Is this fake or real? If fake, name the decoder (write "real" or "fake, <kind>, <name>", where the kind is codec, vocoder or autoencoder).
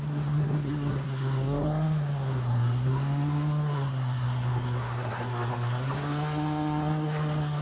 fake, codec, SNAC